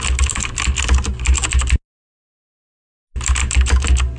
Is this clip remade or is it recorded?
recorded